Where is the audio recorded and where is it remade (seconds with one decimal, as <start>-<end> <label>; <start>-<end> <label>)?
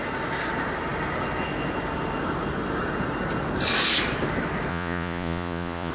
0.0-4.7 recorded; 4.7-5.9 remade